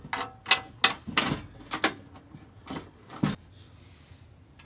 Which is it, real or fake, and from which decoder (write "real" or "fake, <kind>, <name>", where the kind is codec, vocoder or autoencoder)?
real